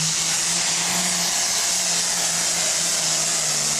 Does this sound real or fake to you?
real